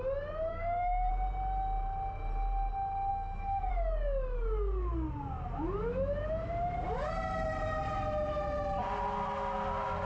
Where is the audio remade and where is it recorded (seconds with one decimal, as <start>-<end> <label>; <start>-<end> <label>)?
0.0-0.5 recorded; 0.5-1.1 remade; 1.1-3.1 recorded; 3.1-3.7 remade; 3.7-10.1 recorded